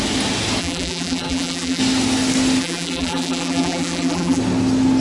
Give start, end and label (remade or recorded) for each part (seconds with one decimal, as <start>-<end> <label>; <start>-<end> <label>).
0.0-0.6 recorded; 0.6-1.8 remade; 1.8-2.6 recorded; 2.6-4.4 remade; 4.4-5.0 recorded